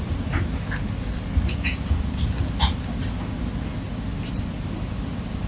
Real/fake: real